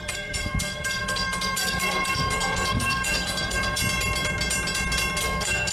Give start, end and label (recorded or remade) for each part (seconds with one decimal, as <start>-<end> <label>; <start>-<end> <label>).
0.0-3.8 remade; 3.8-5.2 recorded; 5.2-5.7 remade